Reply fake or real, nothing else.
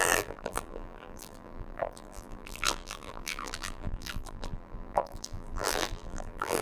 fake